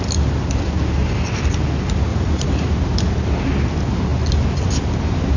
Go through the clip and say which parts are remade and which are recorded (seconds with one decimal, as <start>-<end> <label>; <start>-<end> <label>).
0.0-2.1 recorded; 2.1-2.7 remade; 2.7-5.4 recorded